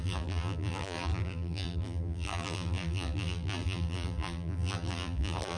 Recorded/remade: remade